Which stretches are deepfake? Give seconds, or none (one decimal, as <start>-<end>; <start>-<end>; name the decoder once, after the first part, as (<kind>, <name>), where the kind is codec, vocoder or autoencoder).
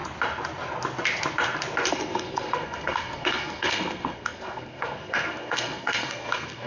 1.9-6.7 (codec, SNAC)